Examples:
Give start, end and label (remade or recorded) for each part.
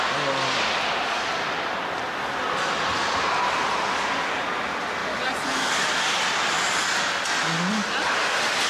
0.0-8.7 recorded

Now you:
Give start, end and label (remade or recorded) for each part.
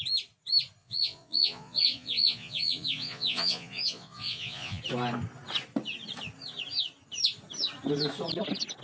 0.0-0.8 recorded; 0.8-4.8 remade; 4.8-8.8 recorded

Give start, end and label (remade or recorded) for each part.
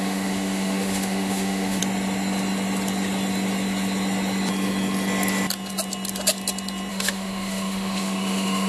0.0-1.8 remade; 1.8-6.9 recorded; 6.9-8.7 remade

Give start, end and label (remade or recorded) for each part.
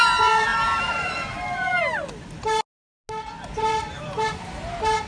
0.0-5.1 recorded